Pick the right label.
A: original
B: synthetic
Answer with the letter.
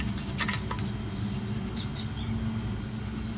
A